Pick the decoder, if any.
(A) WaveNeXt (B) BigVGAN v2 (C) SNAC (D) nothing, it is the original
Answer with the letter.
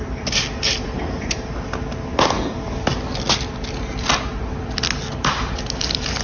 D